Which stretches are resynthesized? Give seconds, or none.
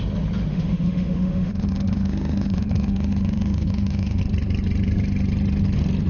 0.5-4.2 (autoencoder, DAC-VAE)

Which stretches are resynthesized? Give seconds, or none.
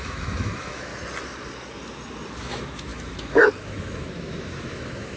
0.0-0.9 (autoencoder, DAC-VAE); 2.4-5.2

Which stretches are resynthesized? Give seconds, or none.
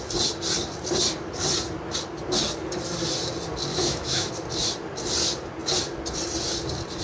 3.7-4.3 (autoencoder, DAC-VAE)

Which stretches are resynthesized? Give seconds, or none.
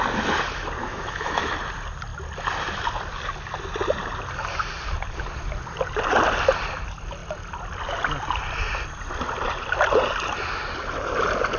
0.8-1.5 (autoencoder, DAC-VAE)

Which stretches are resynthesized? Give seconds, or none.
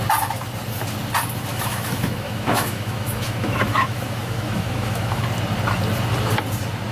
1.5-5.2 (autoencoder, DAC-VAE)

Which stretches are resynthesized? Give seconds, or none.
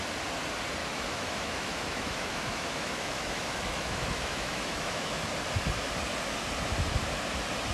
0.8-5.3 (autoencoder, DAC-VAE)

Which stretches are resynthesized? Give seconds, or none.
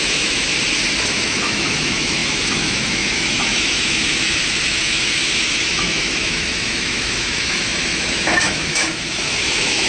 0.0-0.5 (autoencoder, DAC-VAE); 1.1-9.9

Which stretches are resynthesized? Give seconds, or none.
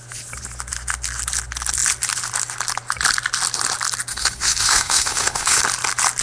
4.1-5.6 (autoencoder, DAC-VAE)